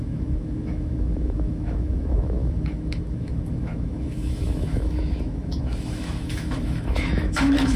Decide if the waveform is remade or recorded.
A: remade